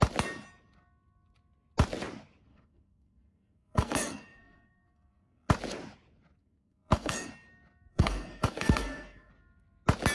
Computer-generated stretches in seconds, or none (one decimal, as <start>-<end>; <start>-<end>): 2.5-5.5; 6.4-7.3; 7.9-9.3